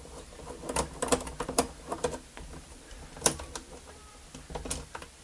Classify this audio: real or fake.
real